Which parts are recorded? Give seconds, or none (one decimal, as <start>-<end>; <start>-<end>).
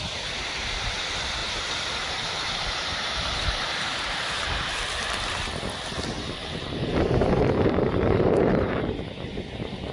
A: 0.0-1.4; 4.7-6.4; 9.0-9.9